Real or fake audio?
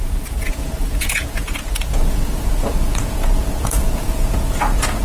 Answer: fake